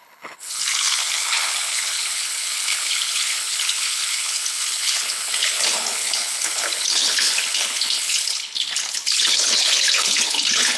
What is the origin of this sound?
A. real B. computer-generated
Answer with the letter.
B